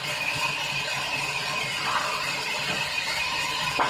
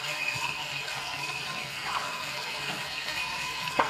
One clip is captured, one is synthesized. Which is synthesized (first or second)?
second